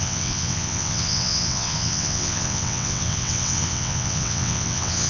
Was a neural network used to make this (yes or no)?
yes